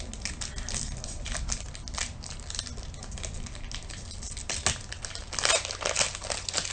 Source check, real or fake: real